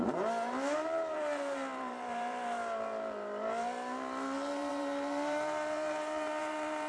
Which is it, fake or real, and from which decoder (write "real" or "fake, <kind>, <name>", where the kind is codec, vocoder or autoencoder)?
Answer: fake, vocoder, BigVGAN v2